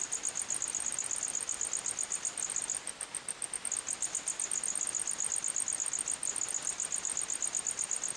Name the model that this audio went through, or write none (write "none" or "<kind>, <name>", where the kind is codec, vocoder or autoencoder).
none